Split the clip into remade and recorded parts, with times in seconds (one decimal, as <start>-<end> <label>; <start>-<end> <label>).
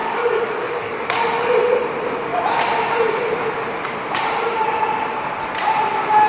0.0-1.4 remade; 1.4-6.3 recorded